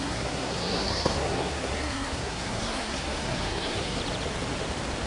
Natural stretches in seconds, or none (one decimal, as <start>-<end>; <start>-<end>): 4.0-5.1